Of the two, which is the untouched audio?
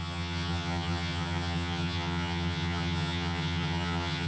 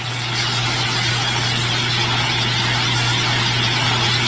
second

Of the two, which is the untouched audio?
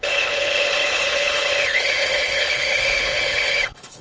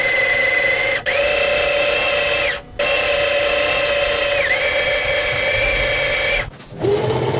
second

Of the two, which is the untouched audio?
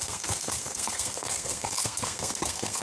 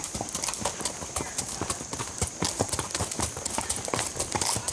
second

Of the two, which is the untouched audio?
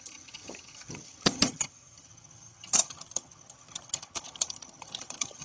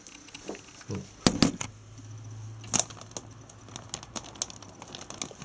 second